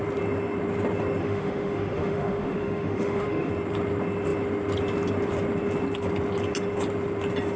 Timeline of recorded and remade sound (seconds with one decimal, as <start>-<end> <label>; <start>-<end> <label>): 0.0-1.2 recorded; 1.2-3.5 remade; 3.5-7.6 recorded